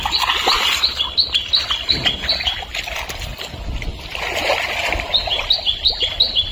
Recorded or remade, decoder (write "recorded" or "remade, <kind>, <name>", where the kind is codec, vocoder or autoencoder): recorded